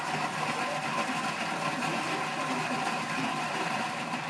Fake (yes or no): no